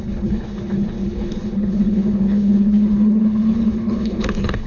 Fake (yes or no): yes